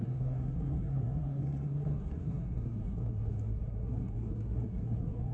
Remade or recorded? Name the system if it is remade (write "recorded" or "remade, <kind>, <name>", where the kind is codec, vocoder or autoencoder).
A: remade, codec, SNAC